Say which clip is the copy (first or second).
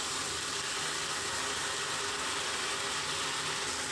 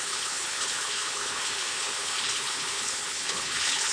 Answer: second